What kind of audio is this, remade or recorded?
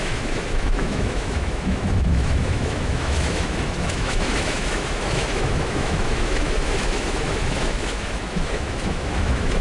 remade